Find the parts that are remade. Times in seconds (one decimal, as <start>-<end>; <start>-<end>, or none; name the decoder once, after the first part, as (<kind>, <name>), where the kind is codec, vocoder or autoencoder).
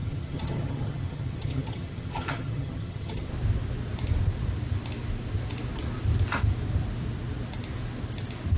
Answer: 0.0-3.3 (vocoder, HiFi-GAN)